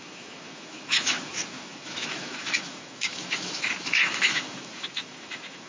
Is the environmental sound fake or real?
fake